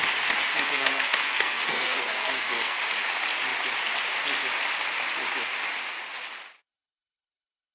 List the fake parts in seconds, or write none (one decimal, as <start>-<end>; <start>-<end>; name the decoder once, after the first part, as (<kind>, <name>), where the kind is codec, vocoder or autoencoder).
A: 0.5-2.8 (codec, SNAC)

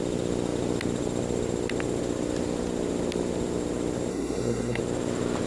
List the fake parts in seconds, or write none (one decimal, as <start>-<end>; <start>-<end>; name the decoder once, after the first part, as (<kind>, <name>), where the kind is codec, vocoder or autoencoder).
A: 4.1-4.8 (codec, SNAC)

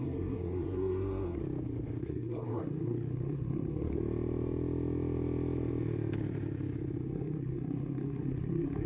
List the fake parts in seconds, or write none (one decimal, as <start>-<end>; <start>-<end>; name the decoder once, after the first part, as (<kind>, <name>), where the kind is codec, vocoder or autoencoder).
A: 0.0-1.4 (codec, SNAC); 2.0-4.0; 7.0-8.9

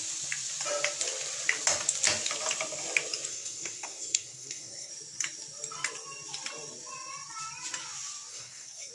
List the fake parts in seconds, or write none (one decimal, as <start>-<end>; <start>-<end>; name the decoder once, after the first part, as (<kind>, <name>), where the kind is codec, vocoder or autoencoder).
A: 3.3-4.9 (codec, SNAC); 8.3-8.9

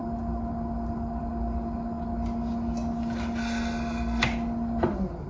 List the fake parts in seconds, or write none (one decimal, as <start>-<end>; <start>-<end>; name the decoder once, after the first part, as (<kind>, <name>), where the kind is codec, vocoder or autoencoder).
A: 3.4-4.2 (codec, SNAC)

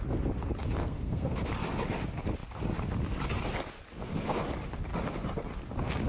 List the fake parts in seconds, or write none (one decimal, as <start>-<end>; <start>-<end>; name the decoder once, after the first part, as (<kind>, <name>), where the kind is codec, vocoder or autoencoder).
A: 0.8-1.5 (codec, SNAC)

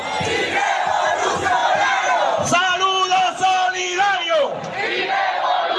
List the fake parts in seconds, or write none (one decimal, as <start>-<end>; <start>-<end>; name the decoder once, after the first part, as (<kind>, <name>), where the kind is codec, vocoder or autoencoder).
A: none

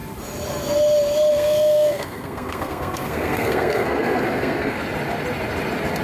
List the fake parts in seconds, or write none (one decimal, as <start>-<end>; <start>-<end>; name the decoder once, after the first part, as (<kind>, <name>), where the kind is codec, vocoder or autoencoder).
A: 1.3-4.8 (codec, SNAC)